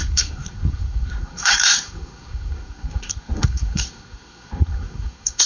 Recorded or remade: remade